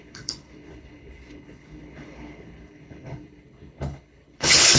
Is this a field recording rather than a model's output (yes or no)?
no